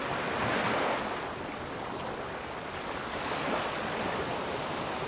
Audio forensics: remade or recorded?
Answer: recorded